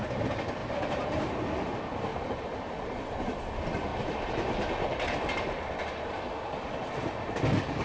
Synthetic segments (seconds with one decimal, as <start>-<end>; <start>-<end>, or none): 0.6-1.3; 2.1-2.9; 3.9-6.1